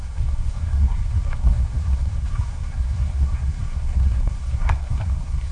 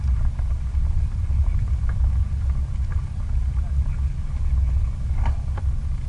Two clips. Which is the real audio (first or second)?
second